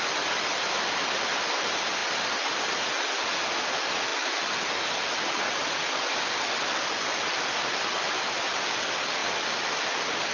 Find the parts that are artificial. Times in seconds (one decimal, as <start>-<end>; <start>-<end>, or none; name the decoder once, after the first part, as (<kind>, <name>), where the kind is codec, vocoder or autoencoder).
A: none